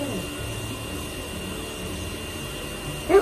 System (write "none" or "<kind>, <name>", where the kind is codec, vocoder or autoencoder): none